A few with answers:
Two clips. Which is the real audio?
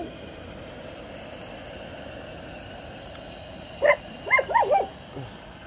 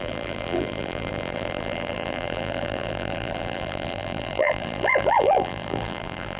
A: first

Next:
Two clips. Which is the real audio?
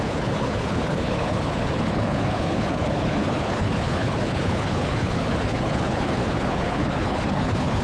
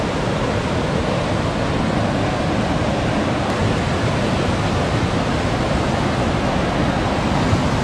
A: second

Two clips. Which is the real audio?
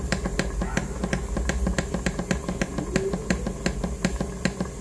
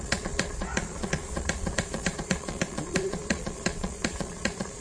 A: first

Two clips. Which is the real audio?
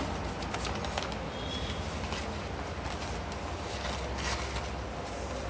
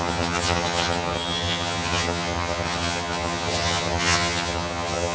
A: first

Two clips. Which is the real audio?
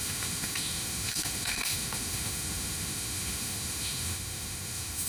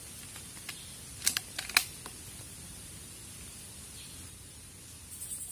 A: second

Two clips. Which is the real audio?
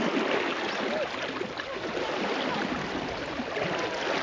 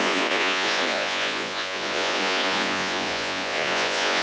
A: first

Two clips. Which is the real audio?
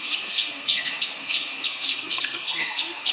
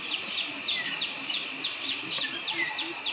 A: second